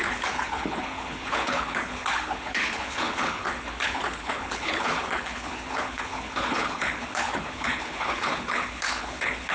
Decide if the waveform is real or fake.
fake